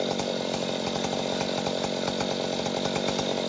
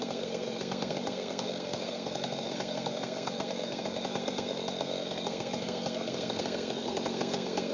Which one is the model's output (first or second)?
second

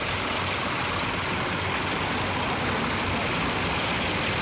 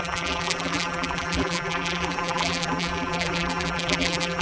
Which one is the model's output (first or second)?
second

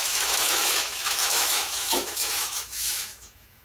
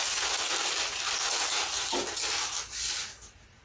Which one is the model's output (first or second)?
first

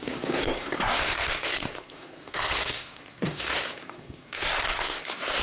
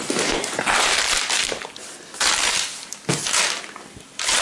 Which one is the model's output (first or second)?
first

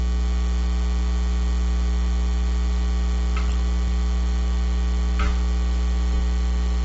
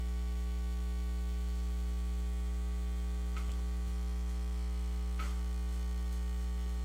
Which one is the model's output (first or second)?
second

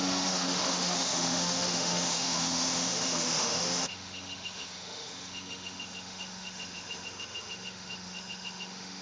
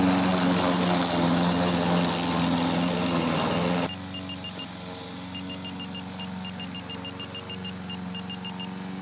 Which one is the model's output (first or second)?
first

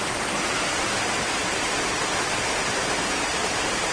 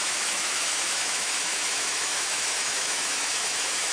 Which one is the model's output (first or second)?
second